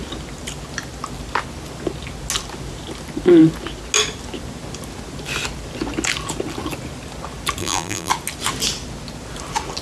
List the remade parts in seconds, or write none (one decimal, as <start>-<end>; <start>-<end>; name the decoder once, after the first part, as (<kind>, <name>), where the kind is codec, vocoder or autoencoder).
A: 7.6-8.1 (vocoder, BigVGAN v2)